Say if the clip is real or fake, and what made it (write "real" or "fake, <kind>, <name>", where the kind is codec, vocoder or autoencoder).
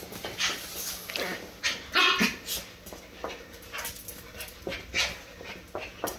real